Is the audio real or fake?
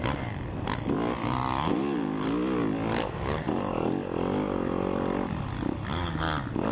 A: real